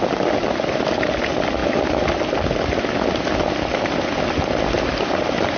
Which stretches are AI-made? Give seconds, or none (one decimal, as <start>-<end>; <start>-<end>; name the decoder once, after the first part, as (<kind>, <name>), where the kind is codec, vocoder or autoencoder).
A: none

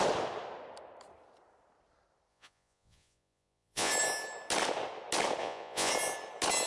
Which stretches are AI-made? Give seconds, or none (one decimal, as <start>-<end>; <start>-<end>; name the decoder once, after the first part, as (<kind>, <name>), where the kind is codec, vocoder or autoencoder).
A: 2.3-3.9 (vocoder, Vocos); 5.4-5.9

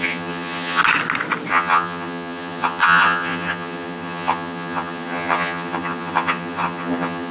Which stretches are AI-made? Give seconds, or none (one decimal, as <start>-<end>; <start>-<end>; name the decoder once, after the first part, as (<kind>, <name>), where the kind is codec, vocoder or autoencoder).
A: 0.0-0.8 (vocoder, HiFi-GAN); 1.5-7.3

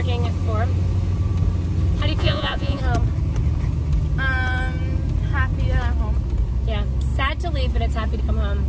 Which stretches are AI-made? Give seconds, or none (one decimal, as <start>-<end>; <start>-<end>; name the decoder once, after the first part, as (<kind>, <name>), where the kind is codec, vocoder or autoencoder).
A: 2.2-2.8 (vocoder, Vocos)